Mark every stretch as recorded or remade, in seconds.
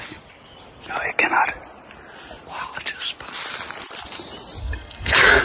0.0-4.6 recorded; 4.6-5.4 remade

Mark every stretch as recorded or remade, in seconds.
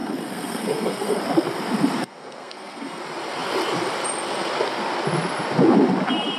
0.0-1.2 remade; 1.2-2.0 recorded; 2.0-3.0 remade; 3.0-6.4 recorded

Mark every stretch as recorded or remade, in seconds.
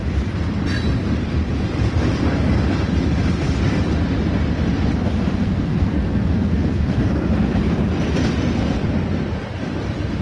0.0-5.4 recorded; 5.4-7.4 remade; 7.4-10.2 recorded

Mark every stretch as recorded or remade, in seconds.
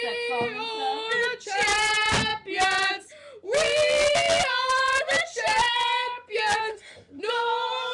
0.0-6.7 recorded; 6.7-7.2 remade; 7.2-7.9 recorded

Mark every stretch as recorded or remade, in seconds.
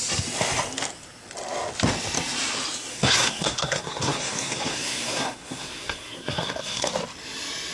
0.0-2.9 recorded; 2.9-6.9 remade; 6.9-7.7 recorded